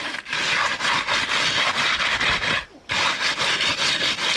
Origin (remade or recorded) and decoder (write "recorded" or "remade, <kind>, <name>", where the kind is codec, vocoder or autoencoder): recorded